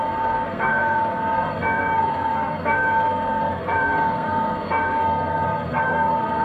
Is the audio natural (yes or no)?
no